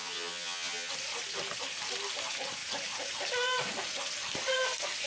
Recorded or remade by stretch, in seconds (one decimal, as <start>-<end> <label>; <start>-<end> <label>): 0.0-0.9 remade; 0.9-5.1 recorded